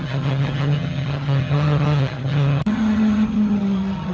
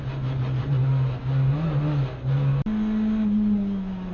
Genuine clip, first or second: second